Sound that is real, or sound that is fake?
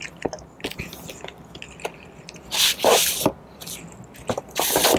real